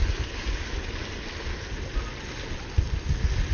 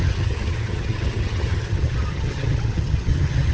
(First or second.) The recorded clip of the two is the first